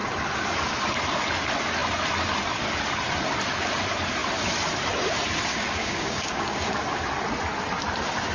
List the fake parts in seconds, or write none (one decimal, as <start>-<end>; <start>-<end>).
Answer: 5.5-6.7